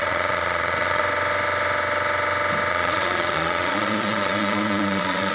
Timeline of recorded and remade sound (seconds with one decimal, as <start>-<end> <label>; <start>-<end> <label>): 0.0-1.0 remade; 1.0-2.7 recorded; 2.7-5.3 remade